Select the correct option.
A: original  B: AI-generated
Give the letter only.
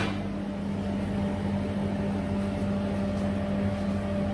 A